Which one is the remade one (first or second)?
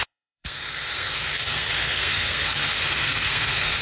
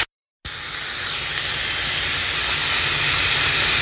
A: first